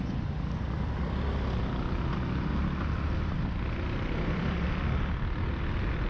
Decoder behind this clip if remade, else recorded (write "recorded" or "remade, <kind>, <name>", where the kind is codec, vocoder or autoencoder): recorded